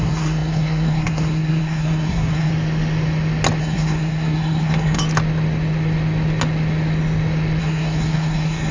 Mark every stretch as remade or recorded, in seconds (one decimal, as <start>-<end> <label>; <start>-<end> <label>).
0.0-2.5 remade; 2.5-3.6 recorded; 3.6-5.0 remade; 5.0-7.6 recorded; 7.6-8.7 remade